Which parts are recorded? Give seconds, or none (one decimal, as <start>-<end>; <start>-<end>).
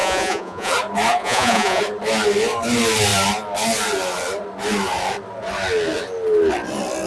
0.7-1.2; 1.8-7.1